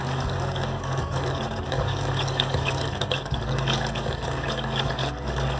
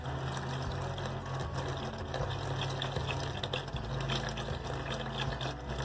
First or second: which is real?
second